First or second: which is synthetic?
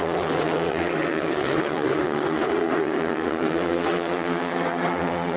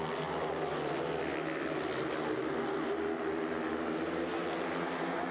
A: first